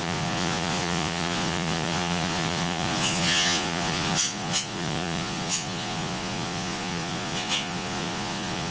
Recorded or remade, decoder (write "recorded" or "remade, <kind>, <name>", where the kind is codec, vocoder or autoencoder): remade, vocoder, Vocos